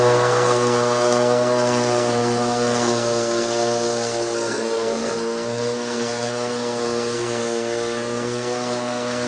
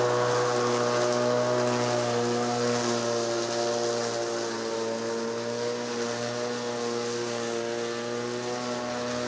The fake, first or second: first